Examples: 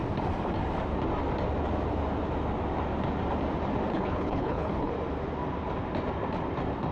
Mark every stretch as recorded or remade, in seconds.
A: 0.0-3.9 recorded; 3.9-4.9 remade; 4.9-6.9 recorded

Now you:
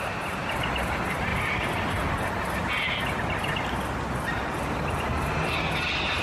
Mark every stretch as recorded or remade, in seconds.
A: 0.0-6.2 recorded

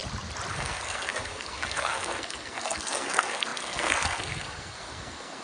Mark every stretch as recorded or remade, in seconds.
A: 0.0-0.5 recorded; 0.5-5.4 remade

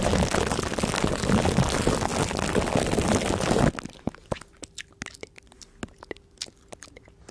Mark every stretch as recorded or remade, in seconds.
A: 0.0-7.3 recorded

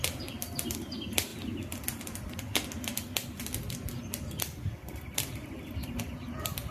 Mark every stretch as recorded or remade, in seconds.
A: 0.0-1.3 remade; 1.3-4.7 recorded; 4.7-6.7 remade

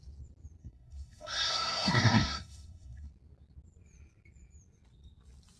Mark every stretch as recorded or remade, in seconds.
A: 0.0-0.6 recorded; 0.6-3.1 remade; 3.1-5.6 recorded

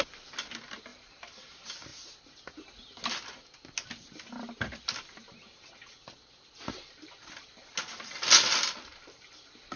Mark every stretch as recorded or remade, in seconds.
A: 0.0-0.9 recorded; 0.9-1.5 remade; 1.5-9.8 recorded